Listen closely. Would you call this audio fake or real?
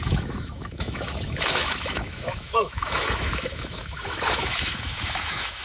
fake